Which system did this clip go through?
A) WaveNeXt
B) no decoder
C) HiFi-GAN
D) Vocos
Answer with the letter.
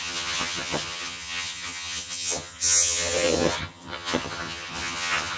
C